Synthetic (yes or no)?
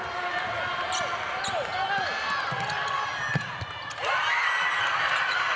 no